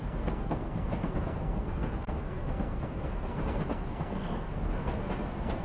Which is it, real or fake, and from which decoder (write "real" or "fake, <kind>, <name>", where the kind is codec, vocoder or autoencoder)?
fake, codec, SNAC